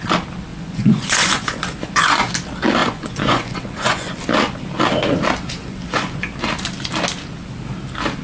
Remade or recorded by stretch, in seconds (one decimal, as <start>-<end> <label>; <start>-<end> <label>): 0.0-0.5 recorded; 0.5-2.3 remade; 2.3-2.8 recorded; 2.8-4.2 remade; 4.2-5.6 recorded; 5.6-6.2 remade; 6.2-8.2 recorded